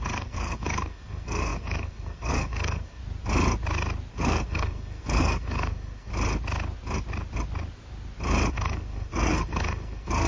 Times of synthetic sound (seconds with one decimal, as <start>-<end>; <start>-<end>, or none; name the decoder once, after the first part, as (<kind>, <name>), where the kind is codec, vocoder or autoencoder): 0.0-3.0 (codec, SNAC); 4.1-6.1; 8.5-10.3